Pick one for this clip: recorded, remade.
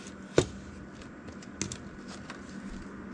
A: recorded